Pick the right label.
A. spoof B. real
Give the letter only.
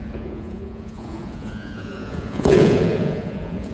A